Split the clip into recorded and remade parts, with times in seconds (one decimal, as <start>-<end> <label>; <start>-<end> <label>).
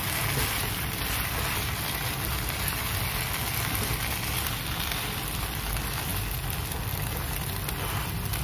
0.0-8.4 recorded